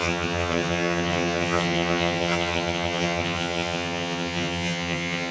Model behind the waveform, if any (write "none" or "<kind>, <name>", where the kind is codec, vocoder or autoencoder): vocoder, HiFi-GAN